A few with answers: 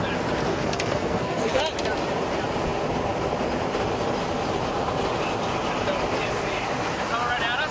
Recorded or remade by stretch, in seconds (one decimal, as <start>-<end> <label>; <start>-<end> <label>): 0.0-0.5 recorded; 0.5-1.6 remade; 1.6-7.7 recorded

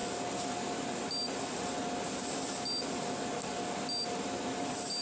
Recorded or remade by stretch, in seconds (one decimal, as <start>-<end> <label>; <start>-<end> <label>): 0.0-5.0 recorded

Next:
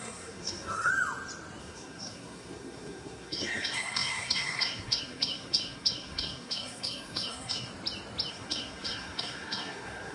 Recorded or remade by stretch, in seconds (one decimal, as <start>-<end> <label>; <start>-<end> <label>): 0.0-0.9 remade; 0.9-1.6 recorded; 1.6-7.7 remade; 7.7-8.3 recorded; 8.3-10.1 remade

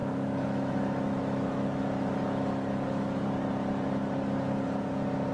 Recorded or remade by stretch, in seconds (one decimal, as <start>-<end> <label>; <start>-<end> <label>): 0.0-3.2 remade; 3.2-5.3 recorded